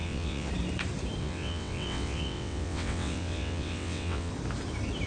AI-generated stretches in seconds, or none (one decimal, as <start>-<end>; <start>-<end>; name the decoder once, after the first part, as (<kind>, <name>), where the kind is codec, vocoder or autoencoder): 0.0-0.5 (vocoder, WaveNeXt); 1.2-4.3